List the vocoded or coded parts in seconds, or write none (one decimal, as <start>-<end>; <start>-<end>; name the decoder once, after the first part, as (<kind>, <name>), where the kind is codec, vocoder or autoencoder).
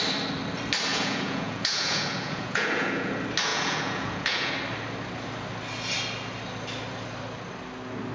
0.9-3.1 (vocoder, Vocos); 3.5-4.5